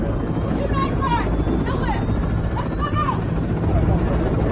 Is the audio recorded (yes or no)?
yes